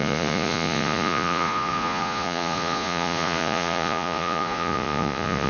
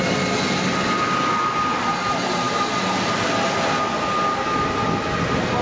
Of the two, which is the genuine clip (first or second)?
second